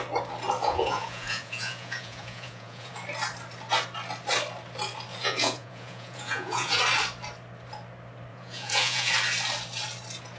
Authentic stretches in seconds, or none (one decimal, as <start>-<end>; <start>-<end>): 0.0-0.6; 2.9-5.1; 6.8-8.3; 9.1-10.4